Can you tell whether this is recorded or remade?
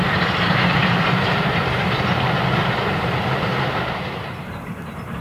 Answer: remade